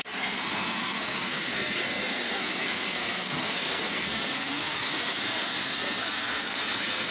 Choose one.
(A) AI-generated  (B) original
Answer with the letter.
A